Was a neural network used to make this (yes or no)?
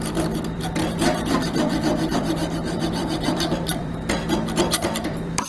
yes